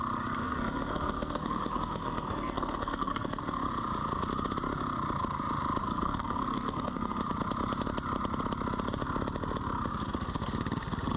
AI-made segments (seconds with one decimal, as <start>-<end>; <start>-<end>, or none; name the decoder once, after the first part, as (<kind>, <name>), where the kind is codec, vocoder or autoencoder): 0.4-3.4 (codec, SNAC); 5.8-7.2